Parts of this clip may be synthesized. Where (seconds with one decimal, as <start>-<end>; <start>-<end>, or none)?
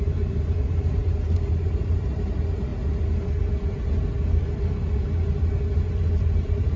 0.0-2.7; 6.2-6.8